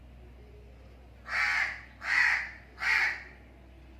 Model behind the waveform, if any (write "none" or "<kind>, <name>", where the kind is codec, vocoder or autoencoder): none